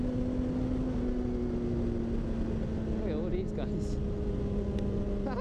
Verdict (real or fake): real